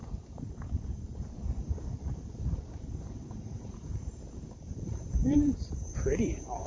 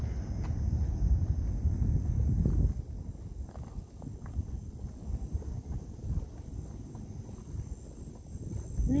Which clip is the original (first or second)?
second